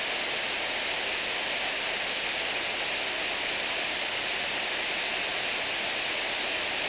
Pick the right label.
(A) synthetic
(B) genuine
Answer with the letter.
B